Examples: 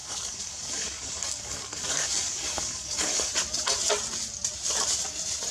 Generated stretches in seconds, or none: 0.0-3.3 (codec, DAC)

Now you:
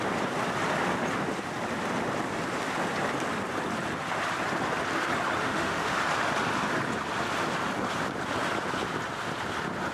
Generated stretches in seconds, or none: 5.4-6.0 (autoencoder, DAC-VAE)